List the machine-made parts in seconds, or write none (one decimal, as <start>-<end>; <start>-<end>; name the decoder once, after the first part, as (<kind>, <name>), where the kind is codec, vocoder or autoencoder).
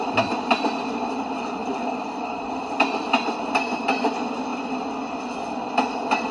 1.6-2.4 (vocoder, BigVGAN v2)